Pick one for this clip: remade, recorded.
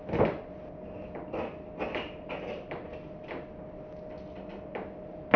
recorded